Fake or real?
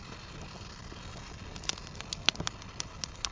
real